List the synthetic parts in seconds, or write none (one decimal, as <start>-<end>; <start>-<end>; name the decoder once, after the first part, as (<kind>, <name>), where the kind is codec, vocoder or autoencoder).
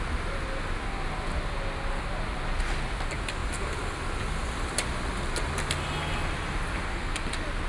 none